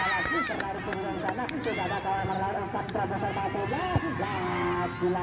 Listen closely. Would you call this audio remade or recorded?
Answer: recorded